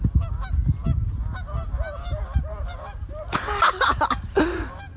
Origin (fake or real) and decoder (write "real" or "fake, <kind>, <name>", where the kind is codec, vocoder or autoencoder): real